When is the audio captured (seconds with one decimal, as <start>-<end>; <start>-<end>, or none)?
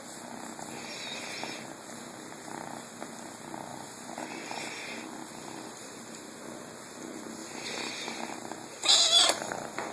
0.0-3.7; 4.2-5.2; 6.4-7.4; 9.4-9.9